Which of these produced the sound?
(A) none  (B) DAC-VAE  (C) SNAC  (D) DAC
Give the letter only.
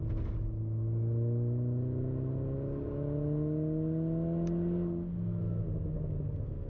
A